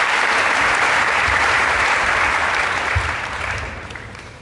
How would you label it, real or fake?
fake